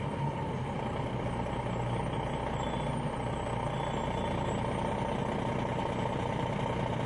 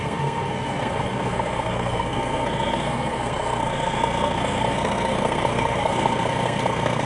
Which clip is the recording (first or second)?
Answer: first